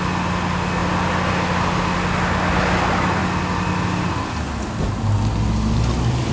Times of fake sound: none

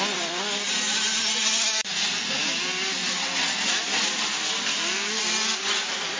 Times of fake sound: none

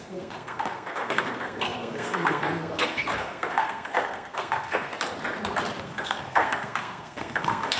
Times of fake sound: 0.0-4.9 (codec, SNAC); 5.8-7.8

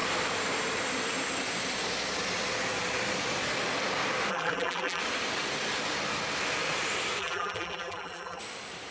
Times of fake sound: 4.3-5.0 (vocoder, BigVGAN v2); 7.2-8.4

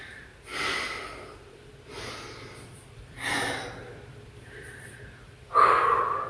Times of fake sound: 0.5-2.3 (vocoder, BigVGAN v2); 2.7-5.5

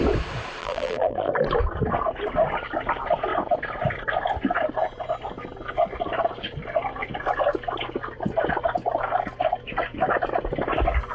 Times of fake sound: 0.6-1.3 (vocoder, BigVGAN v2)

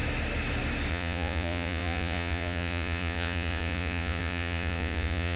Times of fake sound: 0.9-5.4 (vocoder, Vocos)